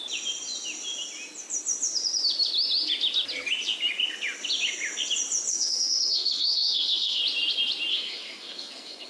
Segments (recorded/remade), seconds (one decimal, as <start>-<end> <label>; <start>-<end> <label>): 0.0-5.5 recorded; 5.5-7.2 remade; 7.2-7.9 recorded; 7.9-9.1 remade